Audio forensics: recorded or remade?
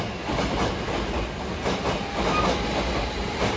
recorded